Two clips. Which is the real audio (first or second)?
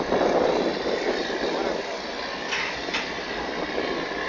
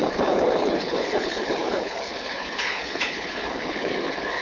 first